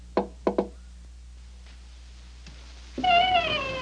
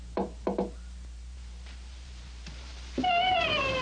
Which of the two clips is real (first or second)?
first